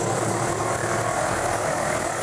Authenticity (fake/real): fake